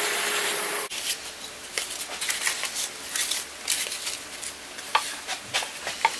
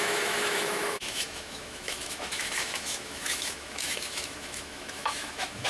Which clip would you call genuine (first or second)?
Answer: first